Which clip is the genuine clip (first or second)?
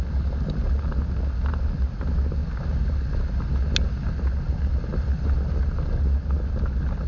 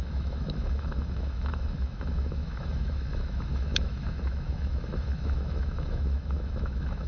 first